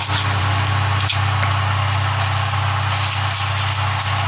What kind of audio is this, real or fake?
real